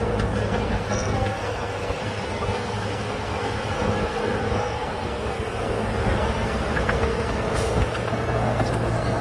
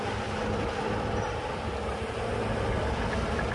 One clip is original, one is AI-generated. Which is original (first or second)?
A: second